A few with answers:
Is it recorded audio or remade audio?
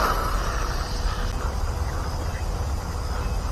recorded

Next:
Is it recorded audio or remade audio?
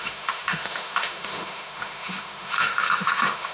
remade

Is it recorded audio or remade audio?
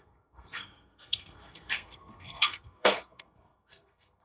remade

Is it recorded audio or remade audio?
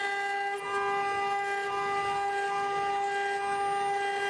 recorded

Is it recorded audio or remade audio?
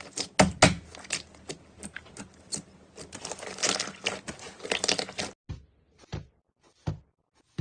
recorded